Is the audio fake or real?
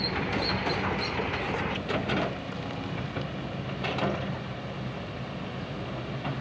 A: real